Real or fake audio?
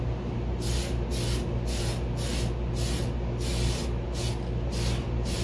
real